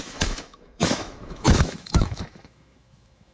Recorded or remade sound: remade